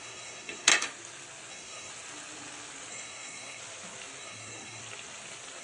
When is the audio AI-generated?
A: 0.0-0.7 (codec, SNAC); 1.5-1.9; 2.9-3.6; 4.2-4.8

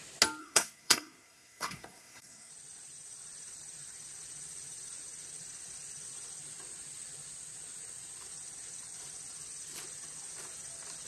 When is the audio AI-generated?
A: 0.4-2.5 (codec, SNAC)

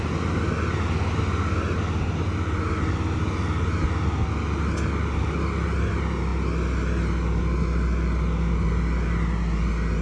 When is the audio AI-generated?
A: none